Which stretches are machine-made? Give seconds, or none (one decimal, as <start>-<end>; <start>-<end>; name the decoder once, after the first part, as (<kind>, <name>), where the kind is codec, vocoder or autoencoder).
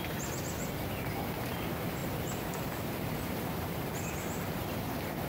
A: 2.0-4.0 (vocoder, BigVGAN v2)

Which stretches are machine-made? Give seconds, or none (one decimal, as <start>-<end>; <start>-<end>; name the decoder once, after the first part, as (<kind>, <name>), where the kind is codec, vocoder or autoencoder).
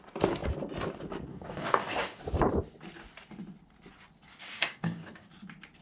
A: 1.3-2.2 (codec, DAC); 4.4-5.3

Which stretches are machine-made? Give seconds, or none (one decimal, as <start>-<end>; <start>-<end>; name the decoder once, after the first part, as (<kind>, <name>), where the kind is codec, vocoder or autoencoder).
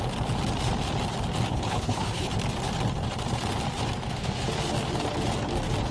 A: 1.5-2.3 (codec, HILCodec)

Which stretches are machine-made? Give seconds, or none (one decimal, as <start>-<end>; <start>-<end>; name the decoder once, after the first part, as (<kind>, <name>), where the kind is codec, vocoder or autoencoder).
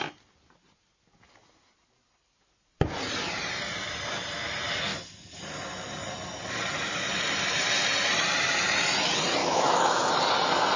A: 9.4-10.1 (autoencoder, DAC-VAE)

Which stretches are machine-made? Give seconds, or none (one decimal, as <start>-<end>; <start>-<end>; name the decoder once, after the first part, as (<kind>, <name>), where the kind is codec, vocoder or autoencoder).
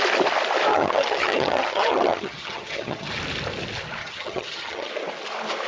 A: 0.7-3.1 (vocoder, HiFi-GAN); 4.0-4.9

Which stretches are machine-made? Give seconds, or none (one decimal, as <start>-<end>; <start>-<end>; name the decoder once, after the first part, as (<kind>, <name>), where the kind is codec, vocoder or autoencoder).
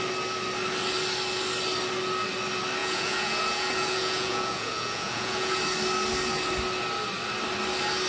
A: 2.8-5.6 (vocoder, Vocos)